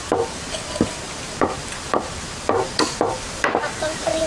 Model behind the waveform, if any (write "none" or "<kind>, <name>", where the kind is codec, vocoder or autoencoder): vocoder, BigVGAN v2